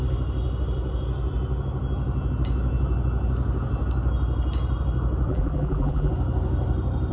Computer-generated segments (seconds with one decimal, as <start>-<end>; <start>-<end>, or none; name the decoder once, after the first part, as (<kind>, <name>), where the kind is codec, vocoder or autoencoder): 5.3-6.1 (vocoder, BigVGAN v2)